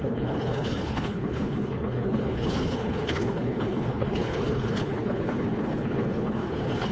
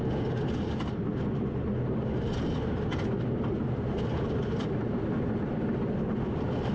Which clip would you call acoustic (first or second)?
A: second